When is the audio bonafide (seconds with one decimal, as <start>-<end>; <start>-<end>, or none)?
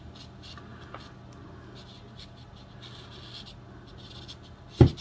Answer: 0.0-5.0